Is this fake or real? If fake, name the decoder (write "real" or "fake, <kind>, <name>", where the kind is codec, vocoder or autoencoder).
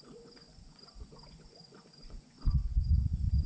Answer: fake, vocoder, Vocos